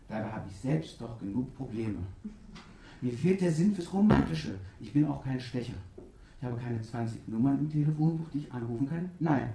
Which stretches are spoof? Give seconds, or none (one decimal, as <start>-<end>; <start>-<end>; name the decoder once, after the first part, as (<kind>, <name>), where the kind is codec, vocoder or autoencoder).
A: 0.7-9.5 (vocoder, WaveNeXt)